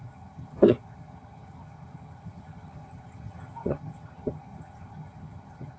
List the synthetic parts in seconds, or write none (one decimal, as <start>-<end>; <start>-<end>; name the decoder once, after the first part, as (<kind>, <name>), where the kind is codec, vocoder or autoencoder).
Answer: 0.0-5.8 (vocoder, HiFi-GAN)